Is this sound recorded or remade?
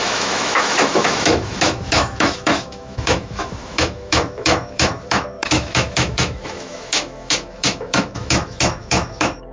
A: remade